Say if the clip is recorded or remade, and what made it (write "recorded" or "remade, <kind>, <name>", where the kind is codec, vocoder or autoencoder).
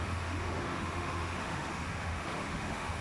remade, autoencoder, DAC-VAE